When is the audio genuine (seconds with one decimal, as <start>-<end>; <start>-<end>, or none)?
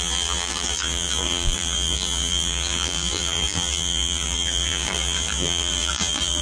none